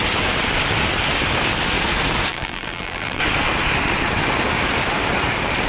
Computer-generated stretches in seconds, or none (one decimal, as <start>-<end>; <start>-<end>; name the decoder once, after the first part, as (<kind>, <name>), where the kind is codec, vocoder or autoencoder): 2.3-3.2 (vocoder, BigVGAN v2)

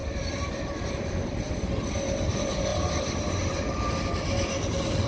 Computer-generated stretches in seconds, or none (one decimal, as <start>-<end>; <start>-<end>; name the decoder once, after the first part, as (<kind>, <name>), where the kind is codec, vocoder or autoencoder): 0.0-5.1 (vocoder, BigVGAN v2)

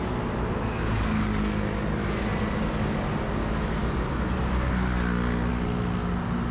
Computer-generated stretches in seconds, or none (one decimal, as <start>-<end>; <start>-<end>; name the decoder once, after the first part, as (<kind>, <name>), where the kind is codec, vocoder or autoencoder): none

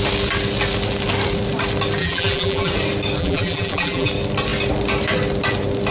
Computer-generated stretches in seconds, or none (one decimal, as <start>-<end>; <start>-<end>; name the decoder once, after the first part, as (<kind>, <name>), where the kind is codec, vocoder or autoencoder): 2.0-2.7 (vocoder, BigVGAN v2); 3.2-4.1

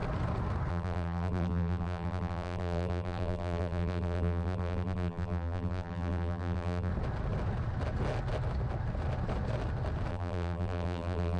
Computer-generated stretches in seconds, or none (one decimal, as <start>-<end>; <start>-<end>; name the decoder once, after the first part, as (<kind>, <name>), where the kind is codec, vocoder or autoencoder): 0.7-6.9 (vocoder, BigVGAN v2); 10.1-11.4

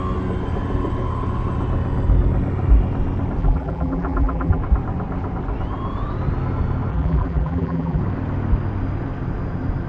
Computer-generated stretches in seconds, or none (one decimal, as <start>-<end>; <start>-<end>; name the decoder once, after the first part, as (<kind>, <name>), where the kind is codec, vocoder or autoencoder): 3.4-4.6 (vocoder, BigVGAN v2); 6.9-8.0

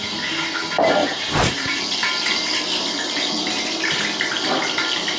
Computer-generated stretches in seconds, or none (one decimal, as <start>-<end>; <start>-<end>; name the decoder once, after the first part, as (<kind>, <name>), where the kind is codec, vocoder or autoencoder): 1.0-1.8 (vocoder, BigVGAN v2)

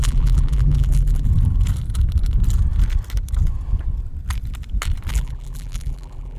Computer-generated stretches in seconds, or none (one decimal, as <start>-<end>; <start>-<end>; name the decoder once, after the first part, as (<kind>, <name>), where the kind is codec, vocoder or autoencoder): 0.0-1.3 (vocoder, BigVGAN v2); 5.1-6.4